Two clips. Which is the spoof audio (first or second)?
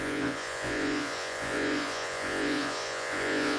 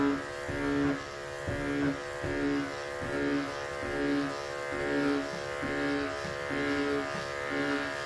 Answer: first